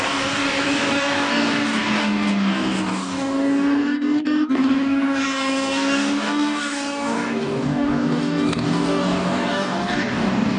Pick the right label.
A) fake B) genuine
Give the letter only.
A